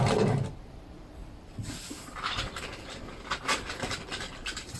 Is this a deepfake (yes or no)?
no